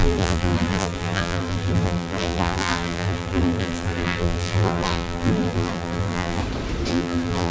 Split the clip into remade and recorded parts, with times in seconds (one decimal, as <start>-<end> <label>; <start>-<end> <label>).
0.0-6.4 remade; 6.4-6.9 recorded; 6.9-7.5 remade